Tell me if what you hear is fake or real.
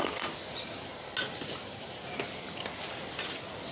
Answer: real